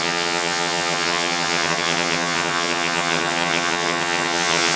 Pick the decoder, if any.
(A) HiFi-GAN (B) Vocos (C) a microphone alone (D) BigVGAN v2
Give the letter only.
A